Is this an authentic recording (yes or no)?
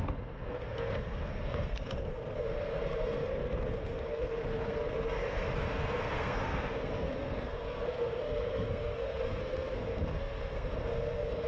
no